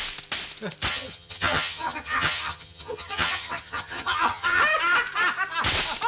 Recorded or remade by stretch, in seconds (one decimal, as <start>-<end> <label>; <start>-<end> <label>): 0.0-0.9 recorded; 0.9-4.6 remade; 4.6-6.1 recorded